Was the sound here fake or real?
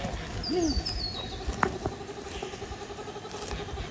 real